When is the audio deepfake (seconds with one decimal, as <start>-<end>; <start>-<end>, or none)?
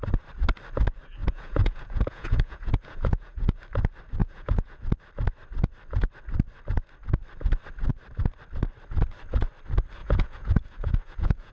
1.2-3.6; 4.2-4.8; 10.0-11.5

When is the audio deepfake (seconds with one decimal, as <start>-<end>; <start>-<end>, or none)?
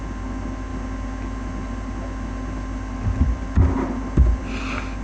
none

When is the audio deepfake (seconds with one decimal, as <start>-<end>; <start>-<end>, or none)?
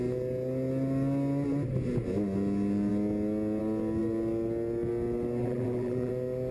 5.4-6.1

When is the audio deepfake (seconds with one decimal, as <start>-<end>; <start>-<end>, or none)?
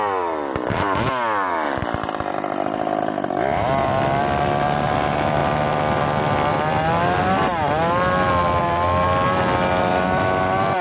none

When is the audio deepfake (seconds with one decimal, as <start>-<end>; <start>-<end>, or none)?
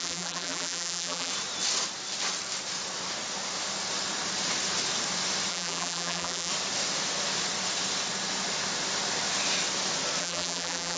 0.0-1.3; 5.5-6.5; 10.2-11.0